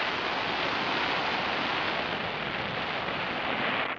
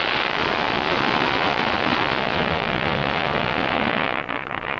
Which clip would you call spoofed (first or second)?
second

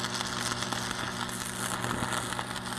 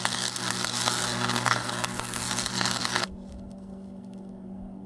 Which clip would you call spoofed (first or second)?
second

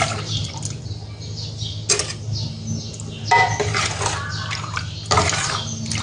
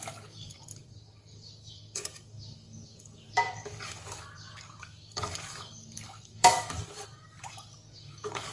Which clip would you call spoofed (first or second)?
second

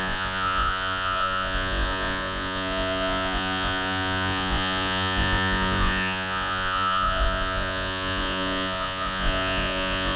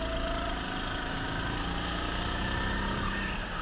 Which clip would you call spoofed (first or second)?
first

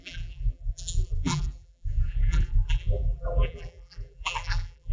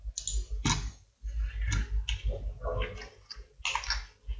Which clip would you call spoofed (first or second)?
first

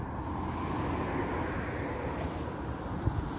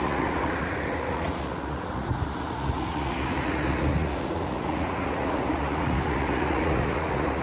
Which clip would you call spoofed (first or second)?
second